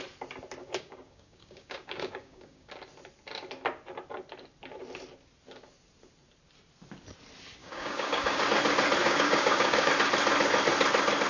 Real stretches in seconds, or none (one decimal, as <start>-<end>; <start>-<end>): 0.0-0.6; 2.7-7.6; 8.4-9.0; 9.9-11.3